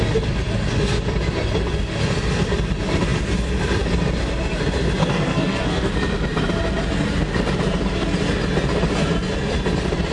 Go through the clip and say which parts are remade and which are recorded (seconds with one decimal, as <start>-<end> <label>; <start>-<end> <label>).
0.0-5.0 recorded; 5.0-5.9 remade; 5.9-10.1 recorded